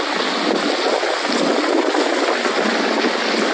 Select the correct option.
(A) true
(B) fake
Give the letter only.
A